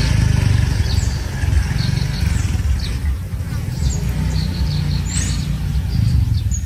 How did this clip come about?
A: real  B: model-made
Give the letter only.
A